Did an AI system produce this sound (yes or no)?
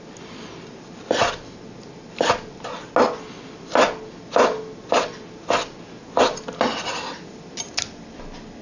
no